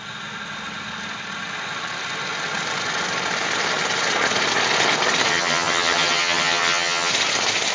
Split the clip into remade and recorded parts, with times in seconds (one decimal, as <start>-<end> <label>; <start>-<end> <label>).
0.0-5.3 recorded; 5.3-7.1 remade; 7.1-7.7 recorded